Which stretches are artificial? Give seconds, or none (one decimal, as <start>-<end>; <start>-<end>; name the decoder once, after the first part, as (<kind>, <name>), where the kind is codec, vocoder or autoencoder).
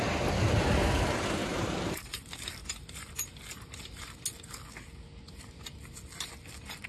1.5-2.2 (vocoder, BigVGAN v2); 2.6-3.3